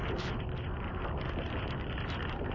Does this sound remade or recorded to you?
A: recorded